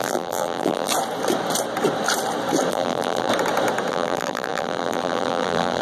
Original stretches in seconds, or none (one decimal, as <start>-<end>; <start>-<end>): 0.9-2.7; 3.3-3.9

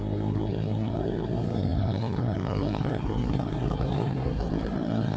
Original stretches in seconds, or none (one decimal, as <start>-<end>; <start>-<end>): none

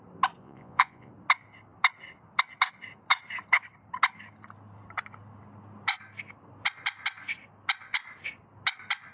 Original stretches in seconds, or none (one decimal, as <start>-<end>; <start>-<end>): 0.0-0.4; 1.1-9.1

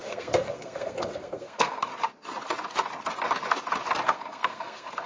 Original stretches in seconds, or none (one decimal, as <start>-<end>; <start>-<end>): 1.9-4.0

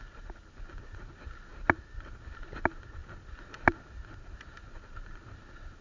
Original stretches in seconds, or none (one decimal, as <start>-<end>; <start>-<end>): 0.0-5.8

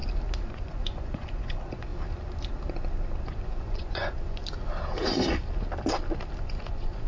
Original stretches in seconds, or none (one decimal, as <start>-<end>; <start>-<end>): 0.0-0.5; 1.9-3.2; 4.4-6.4